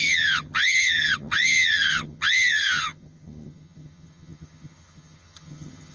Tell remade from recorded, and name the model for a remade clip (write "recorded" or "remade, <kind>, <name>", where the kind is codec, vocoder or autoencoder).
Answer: remade, vocoder, HiFi-GAN